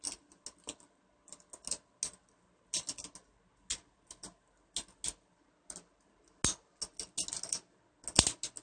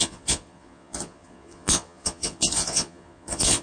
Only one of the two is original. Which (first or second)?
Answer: first